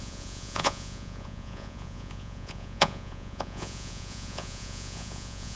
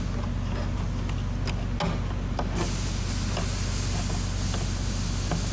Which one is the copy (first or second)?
first